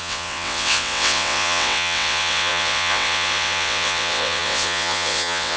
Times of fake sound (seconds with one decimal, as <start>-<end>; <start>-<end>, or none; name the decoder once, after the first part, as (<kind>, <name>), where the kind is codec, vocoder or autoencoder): 0.0-5.6 (vocoder, WaveNeXt)